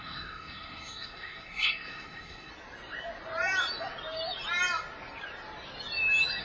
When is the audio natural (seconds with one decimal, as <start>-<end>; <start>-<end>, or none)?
2.5-6.4